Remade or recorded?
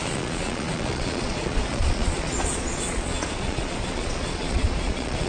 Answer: remade